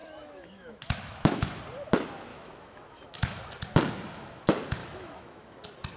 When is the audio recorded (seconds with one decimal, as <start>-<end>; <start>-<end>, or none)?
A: 1.6-2.3; 3.4-4.8; 5.6-6.0